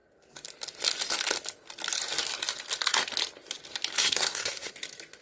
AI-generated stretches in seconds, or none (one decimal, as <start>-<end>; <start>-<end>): 4.0-4.7